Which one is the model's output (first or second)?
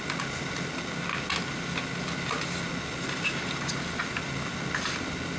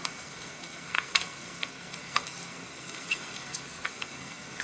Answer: second